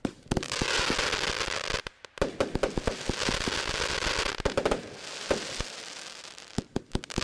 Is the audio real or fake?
real